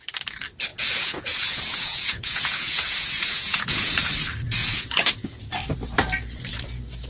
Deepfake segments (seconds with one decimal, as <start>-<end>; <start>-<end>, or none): 0.7-3.9; 4.6-5.5